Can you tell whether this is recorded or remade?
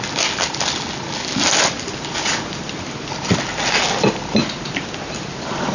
recorded